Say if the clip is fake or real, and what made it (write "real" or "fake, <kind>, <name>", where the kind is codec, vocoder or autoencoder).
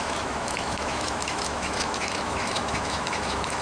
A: fake, autoencoder, DAC-VAE